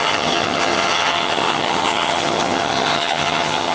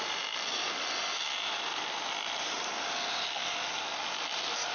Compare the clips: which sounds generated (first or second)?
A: first